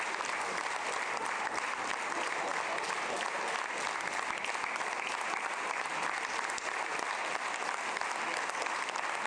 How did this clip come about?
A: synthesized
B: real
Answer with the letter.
B